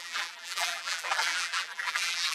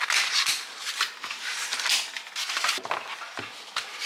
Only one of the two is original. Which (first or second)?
second